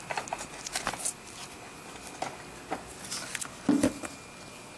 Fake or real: real